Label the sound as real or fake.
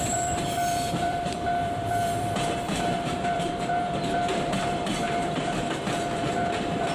fake